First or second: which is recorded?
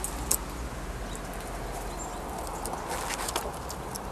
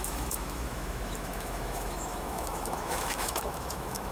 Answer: first